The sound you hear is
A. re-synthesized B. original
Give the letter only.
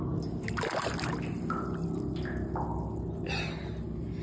B